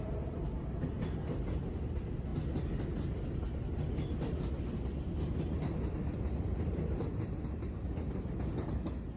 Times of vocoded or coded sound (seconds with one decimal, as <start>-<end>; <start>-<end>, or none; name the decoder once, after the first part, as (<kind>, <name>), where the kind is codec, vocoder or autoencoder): none